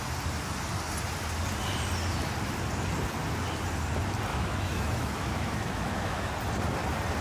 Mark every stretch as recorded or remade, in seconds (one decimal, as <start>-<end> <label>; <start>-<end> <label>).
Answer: 0.0-4.3 recorded; 4.3-6.3 remade; 6.3-7.2 recorded